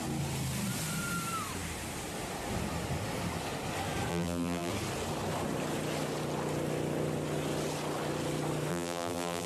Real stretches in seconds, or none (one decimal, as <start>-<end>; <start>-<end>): 0.0-4.1; 4.7-8.7